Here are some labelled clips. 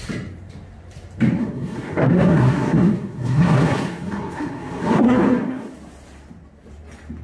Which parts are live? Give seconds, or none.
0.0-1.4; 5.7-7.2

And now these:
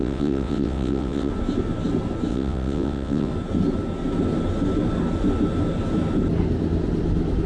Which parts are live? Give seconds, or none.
1.3-2.3; 3.3-7.5